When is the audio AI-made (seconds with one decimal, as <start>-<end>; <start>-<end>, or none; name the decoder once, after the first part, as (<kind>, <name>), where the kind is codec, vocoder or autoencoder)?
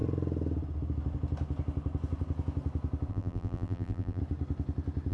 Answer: 3.1-4.2 (vocoder, BigVGAN v2)